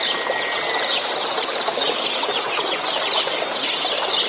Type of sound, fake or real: real